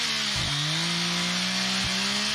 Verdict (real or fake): real